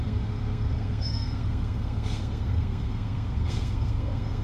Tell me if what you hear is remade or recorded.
remade